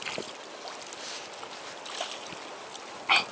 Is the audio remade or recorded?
recorded